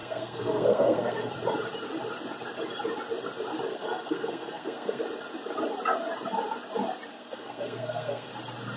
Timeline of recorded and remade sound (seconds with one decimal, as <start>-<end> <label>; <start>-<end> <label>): 0.0-1.3 remade; 1.3-3.7 recorded; 3.7-5.0 remade; 5.0-7.1 recorded; 7.1-8.3 remade; 8.3-8.8 recorded

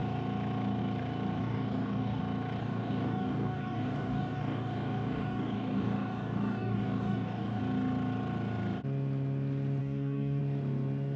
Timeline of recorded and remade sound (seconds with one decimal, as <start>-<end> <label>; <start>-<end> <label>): 0.0-1.4 recorded; 1.4-2.2 remade; 2.2-2.6 recorded; 2.6-7.6 remade; 7.6-9.8 recorded; 9.8-10.4 remade; 10.4-11.2 recorded

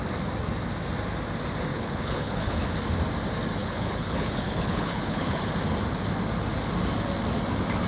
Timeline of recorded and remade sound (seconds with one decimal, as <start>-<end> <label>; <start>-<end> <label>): 0.0-1.7 recorded; 1.7-2.7 remade; 2.7-3.6 recorded; 3.6-5.4 remade; 5.4-7.9 recorded

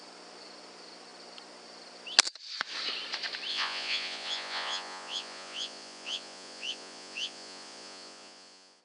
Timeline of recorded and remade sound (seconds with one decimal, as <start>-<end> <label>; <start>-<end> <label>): 0.0-3.5 recorded; 3.5-8.8 remade

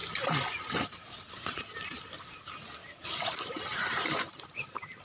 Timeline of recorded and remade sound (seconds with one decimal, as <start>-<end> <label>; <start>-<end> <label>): 0.0-1.6 remade; 1.6-2.8 recorded; 2.8-5.0 remade

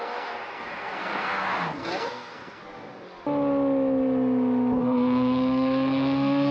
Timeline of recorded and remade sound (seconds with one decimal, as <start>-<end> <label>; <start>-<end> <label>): 0.0-2.6 remade; 2.6-4.8 recorded; 4.8-6.5 remade

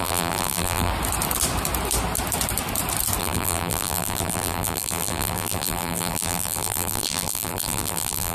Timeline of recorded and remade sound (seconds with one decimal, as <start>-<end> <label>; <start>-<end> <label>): 0.0-0.9 remade; 0.9-3.2 recorded; 3.2-8.3 remade